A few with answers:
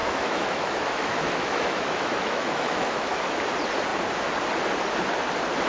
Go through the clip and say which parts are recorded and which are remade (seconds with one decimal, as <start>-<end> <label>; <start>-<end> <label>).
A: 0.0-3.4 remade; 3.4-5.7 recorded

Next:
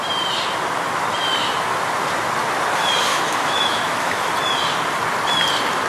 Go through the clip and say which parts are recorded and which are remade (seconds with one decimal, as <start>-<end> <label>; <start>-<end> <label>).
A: 0.0-3.1 recorded; 3.1-4.3 remade; 4.3-5.9 recorded

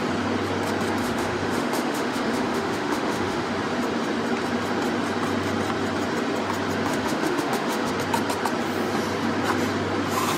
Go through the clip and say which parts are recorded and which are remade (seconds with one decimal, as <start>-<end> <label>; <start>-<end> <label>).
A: 0.0-1.0 recorded; 1.0-3.5 remade; 3.5-6.9 recorded; 6.9-7.9 remade; 7.9-10.4 recorded

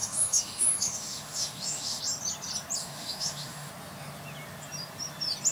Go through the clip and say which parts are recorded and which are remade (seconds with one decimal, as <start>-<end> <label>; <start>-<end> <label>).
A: 0.0-2.0 remade; 2.0-2.8 recorded; 2.8-3.7 remade; 3.7-5.5 recorded

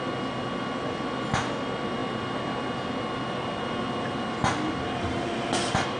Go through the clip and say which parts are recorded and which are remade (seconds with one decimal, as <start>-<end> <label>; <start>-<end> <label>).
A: 0.0-6.0 recorded

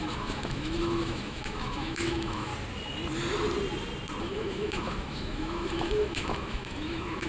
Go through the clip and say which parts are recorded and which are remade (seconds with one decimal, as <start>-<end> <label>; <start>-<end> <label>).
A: 0.0-2.5 remade; 2.5-4.2 recorded; 4.2-7.3 remade

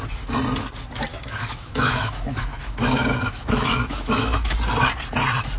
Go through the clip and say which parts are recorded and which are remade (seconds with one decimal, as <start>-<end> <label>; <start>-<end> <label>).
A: 0.0-1.1 recorded; 1.1-4.5 remade; 4.5-5.6 recorded

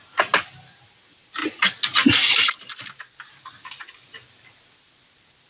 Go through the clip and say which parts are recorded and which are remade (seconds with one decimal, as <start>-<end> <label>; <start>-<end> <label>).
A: 0.0-5.5 recorded